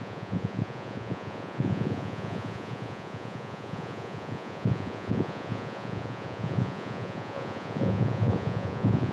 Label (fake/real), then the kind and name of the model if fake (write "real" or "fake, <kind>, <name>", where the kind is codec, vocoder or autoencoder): fake, vocoder, Vocos